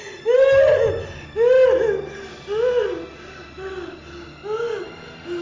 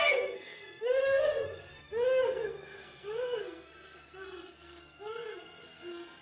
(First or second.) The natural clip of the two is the first